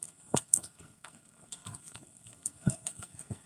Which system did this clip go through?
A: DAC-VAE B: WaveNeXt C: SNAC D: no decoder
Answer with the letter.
C